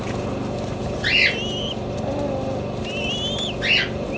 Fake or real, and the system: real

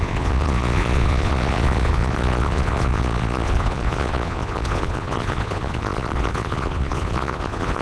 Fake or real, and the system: fake, vocoder, Vocos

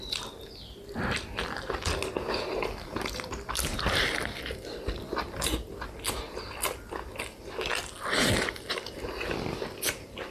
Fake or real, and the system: real